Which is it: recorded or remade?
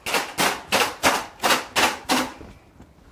recorded